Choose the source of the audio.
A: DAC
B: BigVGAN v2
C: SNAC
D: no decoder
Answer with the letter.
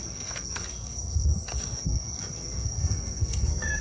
C